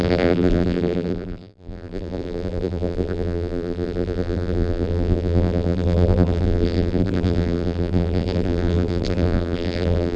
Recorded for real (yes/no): no